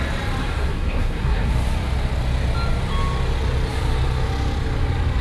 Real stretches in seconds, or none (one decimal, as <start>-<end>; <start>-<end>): 0.0-0.4; 1.5-5.2